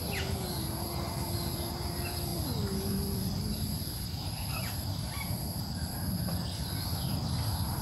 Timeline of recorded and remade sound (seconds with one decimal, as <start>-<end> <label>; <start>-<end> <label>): 0.0-2.3 remade; 2.3-2.9 recorded; 2.9-7.8 remade